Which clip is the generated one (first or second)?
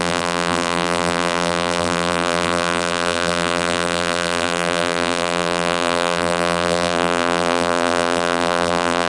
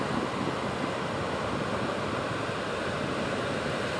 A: first